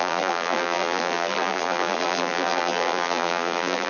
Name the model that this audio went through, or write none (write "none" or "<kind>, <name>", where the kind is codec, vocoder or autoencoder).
vocoder, BigVGAN v2